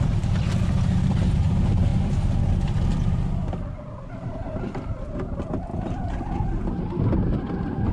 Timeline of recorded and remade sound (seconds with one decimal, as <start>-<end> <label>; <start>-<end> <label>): 0.0-7.9 recorded